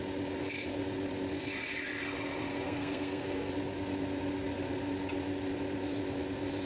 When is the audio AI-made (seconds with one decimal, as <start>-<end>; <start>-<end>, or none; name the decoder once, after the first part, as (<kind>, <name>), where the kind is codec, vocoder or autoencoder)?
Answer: 2.5-3.5 (codec, SNAC)